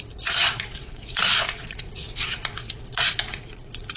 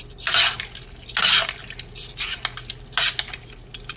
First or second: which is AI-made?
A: first